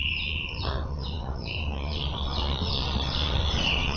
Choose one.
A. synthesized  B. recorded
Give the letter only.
A